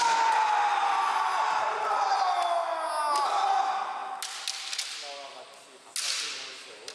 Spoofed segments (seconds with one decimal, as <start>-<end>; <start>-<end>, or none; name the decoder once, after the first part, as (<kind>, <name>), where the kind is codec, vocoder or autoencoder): none